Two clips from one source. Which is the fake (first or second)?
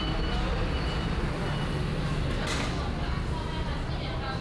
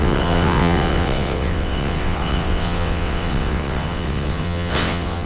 second